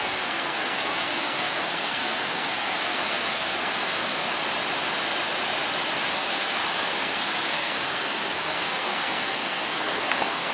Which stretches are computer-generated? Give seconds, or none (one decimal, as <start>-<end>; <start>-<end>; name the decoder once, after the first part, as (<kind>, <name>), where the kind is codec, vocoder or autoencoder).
0.0-4.3 (codec, SNAC); 6.1-10.5